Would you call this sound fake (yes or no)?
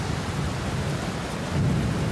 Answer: no